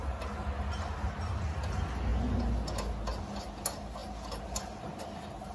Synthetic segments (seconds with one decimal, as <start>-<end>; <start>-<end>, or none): none